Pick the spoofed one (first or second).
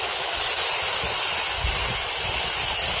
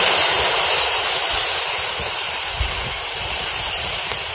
second